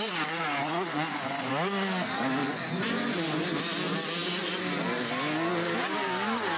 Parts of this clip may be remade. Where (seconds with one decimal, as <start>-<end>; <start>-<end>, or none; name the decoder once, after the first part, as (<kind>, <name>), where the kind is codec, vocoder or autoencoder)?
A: 0.9-1.5 (vocoder, Vocos); 2.4-3.5

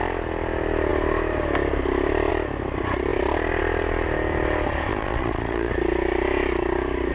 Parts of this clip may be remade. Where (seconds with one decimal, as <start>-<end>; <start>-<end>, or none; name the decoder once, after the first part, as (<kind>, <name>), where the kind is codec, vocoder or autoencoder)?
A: 4.9-5.7 (vocoder, Vocos)